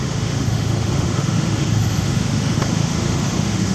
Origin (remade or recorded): remade